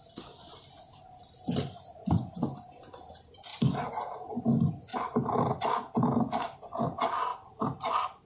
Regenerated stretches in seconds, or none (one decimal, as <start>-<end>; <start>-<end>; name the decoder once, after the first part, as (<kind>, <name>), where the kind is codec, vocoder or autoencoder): none